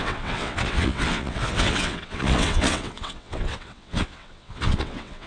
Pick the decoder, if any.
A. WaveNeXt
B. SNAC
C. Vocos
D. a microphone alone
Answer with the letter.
A